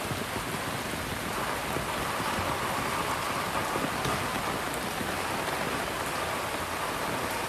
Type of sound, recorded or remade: recorded